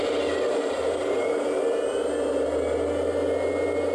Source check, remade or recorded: recorded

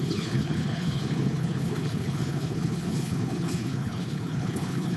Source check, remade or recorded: remade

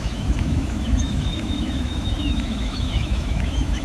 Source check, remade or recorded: remade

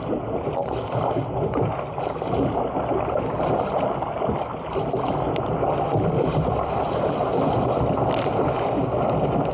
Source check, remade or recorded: recorded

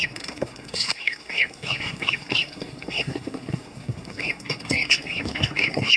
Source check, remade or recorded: remade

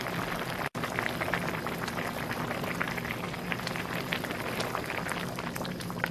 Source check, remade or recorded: recorded